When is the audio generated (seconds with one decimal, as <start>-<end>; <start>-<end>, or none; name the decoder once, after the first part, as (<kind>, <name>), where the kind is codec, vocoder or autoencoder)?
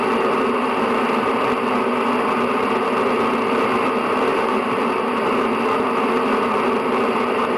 4.3-5.5 (vocoder, BigVGAN v2)